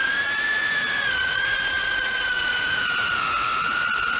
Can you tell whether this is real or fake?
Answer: fake